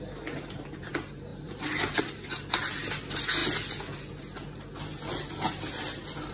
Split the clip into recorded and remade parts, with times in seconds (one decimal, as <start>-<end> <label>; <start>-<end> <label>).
0.0-6.3 recorded